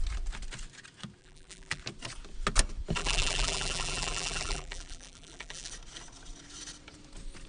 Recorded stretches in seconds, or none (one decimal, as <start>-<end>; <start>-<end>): 0.0-1.2; 1.8-3.0; 5.7-7.5